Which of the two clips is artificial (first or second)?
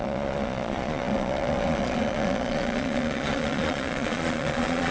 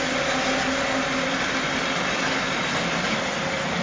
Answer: first